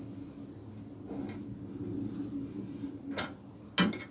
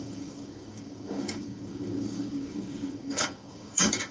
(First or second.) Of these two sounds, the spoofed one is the second